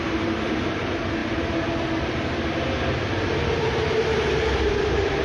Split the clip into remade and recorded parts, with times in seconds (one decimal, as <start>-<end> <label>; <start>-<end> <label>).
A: 0.0-1.2 remade; 1.2-4.3 recorded; 4.3-5.2 remade